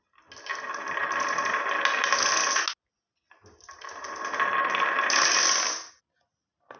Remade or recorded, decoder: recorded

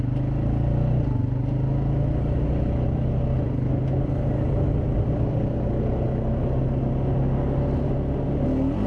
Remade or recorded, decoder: recorded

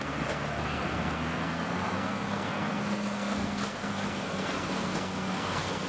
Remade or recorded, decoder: remade, codec, SNAC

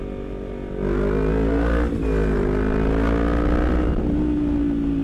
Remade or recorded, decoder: recorded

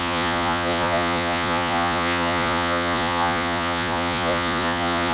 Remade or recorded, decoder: remade, vocoder, Vocos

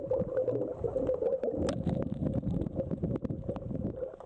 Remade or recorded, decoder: recorded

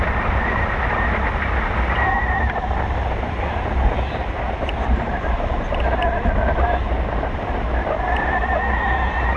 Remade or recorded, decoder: recorded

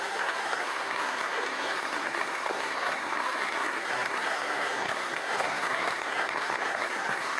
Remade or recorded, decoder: remade, codec, SNAC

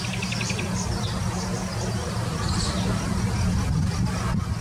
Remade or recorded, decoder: recorded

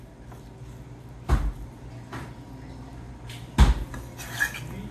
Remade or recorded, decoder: recorded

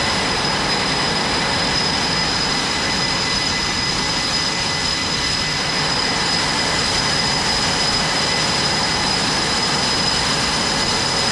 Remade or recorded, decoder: recorded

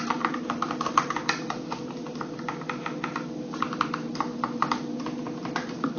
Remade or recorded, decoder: remade, vocoder, BigVGAN v2